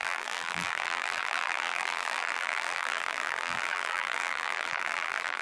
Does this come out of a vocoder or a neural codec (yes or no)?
yes